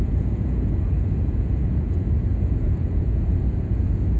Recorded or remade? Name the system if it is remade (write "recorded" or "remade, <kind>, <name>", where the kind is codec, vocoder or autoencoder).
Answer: remade, vocoder, Vocos